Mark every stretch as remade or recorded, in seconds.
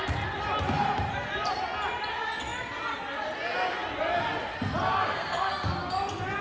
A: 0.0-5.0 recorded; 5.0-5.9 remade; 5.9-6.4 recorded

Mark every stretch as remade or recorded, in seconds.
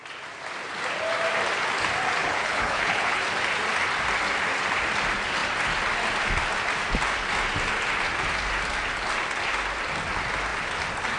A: 0.0-2.2 recorded; 2.2-3.2 remade; 3.2-11.2 recorded